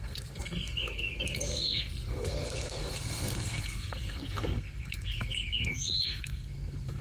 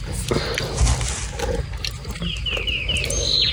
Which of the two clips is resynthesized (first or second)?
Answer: first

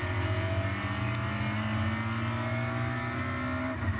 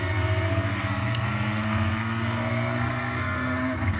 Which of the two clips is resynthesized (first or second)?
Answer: second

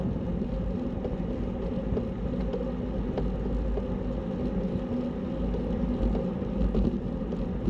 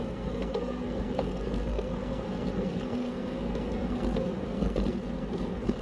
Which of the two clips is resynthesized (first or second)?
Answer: second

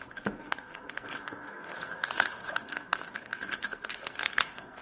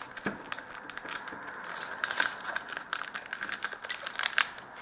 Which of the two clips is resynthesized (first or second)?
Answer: first